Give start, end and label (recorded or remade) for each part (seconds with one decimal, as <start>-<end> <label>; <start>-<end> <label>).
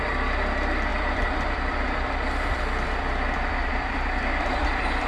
0.0-5.1 remade